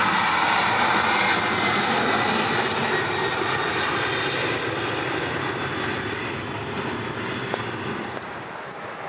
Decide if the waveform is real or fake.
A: real